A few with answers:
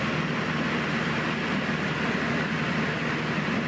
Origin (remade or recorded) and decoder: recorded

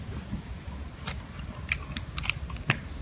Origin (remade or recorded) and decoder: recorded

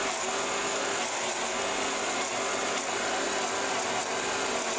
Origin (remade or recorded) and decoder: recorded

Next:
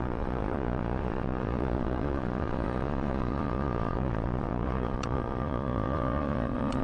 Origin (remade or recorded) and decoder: remade, vocoder, Vocos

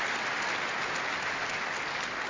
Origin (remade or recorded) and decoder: recorded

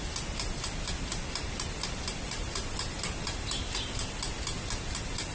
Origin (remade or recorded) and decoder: recorded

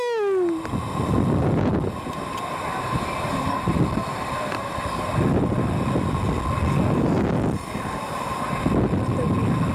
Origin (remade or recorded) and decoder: recorded